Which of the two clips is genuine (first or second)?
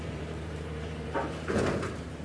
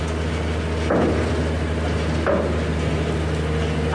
second